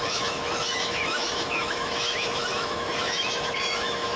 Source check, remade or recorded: remade